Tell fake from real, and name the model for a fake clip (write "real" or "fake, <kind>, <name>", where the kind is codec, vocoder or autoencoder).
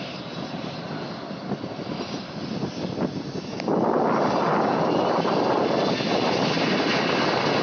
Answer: real